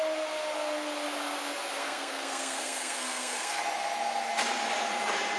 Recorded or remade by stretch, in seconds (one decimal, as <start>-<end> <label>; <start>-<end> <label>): 0.0-1.8 recorded; 1.8-3.6 remade; 3.6-5.4 recorded